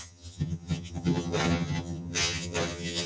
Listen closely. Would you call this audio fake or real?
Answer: fake